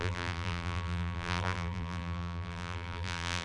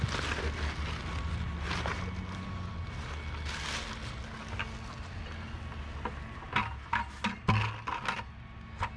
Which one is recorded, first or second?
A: second